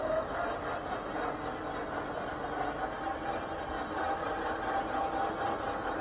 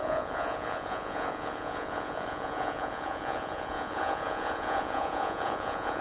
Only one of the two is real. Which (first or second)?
first